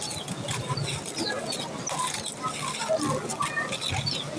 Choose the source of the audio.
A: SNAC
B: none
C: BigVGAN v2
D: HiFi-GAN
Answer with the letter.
B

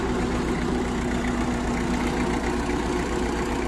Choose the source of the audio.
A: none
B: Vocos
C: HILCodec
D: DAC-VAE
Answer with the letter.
A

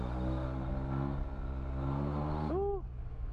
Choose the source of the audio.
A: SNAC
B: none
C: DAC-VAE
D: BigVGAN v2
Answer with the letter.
B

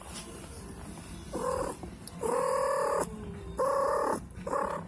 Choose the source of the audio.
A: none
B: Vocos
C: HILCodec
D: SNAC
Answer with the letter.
A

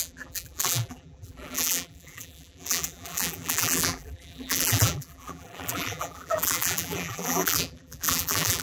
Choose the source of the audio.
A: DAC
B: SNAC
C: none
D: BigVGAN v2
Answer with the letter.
D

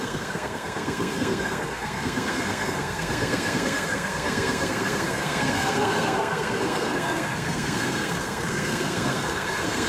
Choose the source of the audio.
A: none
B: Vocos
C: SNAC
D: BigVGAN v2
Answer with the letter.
C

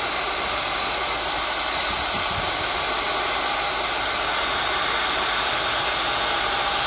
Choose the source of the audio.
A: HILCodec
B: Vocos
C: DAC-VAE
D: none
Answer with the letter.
D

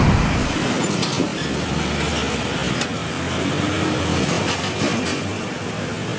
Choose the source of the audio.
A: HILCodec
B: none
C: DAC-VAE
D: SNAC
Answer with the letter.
B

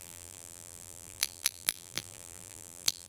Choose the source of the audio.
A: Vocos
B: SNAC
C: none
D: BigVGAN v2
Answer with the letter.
D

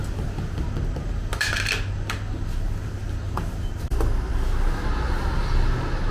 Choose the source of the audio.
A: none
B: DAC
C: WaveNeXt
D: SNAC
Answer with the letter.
A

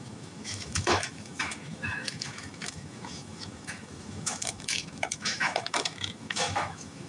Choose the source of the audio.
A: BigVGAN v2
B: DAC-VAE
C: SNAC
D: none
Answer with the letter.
B